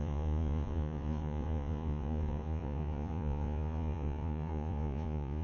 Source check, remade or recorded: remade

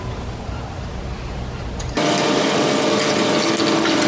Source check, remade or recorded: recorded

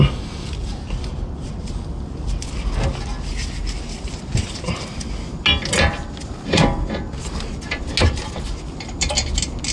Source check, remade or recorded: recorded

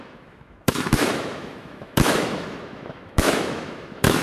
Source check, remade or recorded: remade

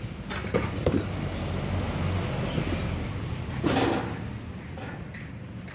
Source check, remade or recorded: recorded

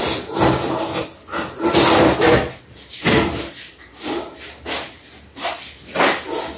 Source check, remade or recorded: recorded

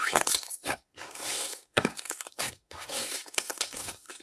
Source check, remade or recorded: remade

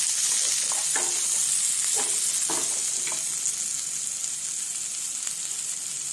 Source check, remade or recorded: recorded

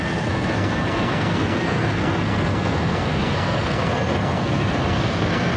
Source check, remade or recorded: remade